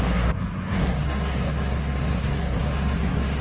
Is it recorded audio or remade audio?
remade